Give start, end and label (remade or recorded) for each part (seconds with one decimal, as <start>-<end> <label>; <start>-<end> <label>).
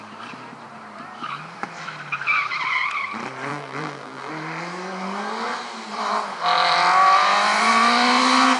0.0-3.5 recorded; 3.5-4.3 remade; 4.3-8.6 recorded